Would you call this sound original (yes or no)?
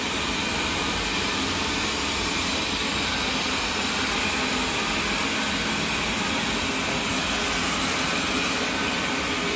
yes